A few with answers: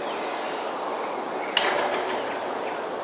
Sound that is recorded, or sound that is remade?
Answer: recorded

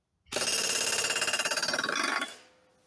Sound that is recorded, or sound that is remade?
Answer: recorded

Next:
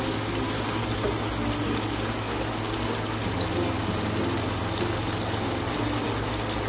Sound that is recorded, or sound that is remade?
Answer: recorded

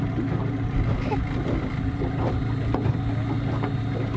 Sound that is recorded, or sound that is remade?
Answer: recorded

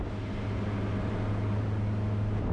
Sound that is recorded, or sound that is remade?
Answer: recorded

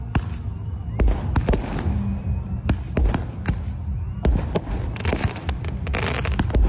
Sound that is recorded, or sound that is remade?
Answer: recorded